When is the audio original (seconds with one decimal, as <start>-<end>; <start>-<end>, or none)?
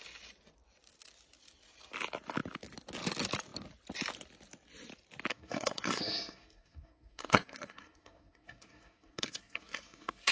0.0-5.3